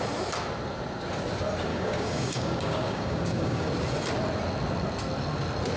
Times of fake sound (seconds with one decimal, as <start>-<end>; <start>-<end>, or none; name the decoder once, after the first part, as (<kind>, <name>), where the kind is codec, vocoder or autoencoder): 1.7-3.7 (codec, DAC)